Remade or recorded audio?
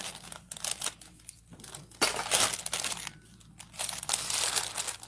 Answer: recorded